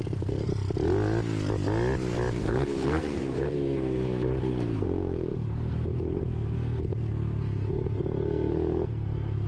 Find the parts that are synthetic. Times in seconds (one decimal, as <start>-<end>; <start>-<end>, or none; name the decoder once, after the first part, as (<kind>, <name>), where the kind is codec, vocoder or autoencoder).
0.0-0.5 (codec, SNAC); 2.4-9.5